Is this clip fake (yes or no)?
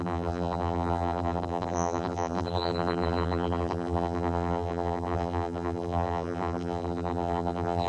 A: yes